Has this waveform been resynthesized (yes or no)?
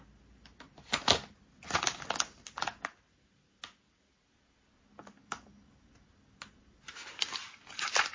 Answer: no